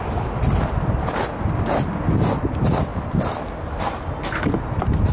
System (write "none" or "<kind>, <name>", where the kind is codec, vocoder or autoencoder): none